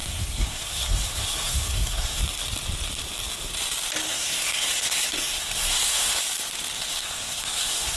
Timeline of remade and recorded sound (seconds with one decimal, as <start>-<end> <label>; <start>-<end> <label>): 0.0-2.2 remade; 2.2-4.1 recorded; 4.1-6.2 remade; 6.2-6.9 recorded; 6.9-8.0 remade